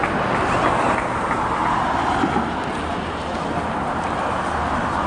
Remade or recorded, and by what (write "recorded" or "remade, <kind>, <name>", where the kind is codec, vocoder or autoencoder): recorded